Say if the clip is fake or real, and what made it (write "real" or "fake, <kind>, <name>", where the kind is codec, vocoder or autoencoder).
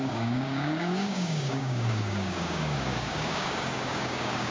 fake, codec, DAC